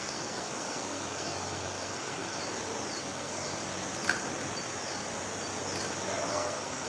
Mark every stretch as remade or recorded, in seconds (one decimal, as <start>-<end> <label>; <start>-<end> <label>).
0.0-2.4 remade; 2.4-3.0 recorded; 3.0-3.6 remade; 3.6-6.3 recorded; 6.3-6.9 remade